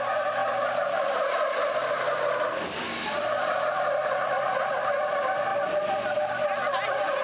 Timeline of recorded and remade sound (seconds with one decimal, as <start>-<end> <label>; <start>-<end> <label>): 0.0-7.2 recorded

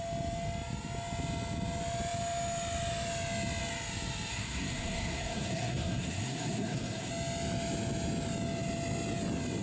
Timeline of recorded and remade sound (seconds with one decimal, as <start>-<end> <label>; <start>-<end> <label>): 0.0-4.3 recorded; 4.3-7.1 remade; 7.1-9.6 recorded